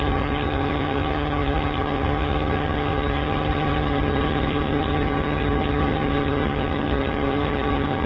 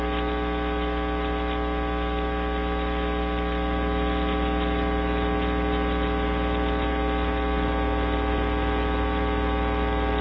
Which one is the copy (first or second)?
first